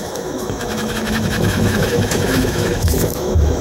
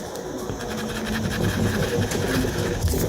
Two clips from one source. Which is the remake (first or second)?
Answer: first